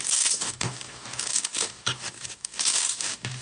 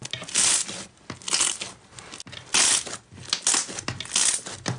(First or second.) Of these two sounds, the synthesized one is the first